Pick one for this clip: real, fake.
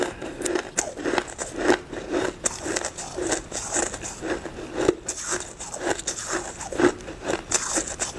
real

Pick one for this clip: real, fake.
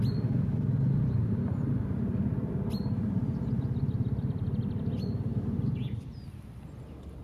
real